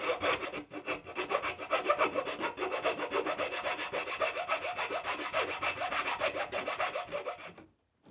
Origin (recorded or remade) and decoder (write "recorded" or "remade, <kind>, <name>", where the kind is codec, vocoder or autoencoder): recorded